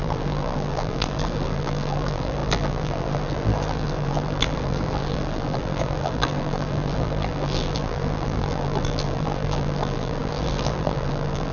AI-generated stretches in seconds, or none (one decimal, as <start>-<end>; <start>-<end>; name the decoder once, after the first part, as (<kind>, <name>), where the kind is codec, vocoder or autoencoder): 0.0-11.5 (vocoder, BigVGAN v2)